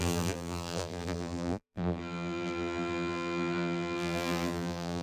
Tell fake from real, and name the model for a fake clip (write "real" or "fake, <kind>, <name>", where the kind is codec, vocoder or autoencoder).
fake, vocoder, BigVGAN v2